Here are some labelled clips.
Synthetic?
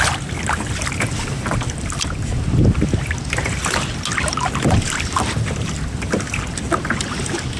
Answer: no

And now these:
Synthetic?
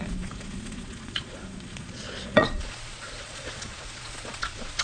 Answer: yes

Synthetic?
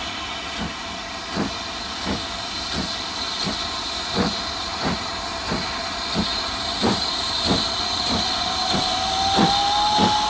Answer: no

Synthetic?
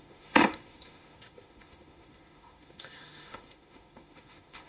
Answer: yes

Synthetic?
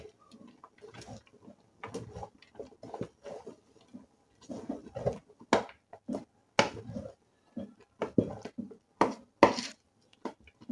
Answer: no